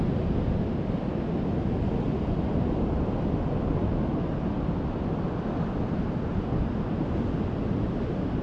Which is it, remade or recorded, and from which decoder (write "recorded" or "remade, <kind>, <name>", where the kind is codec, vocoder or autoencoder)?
recorded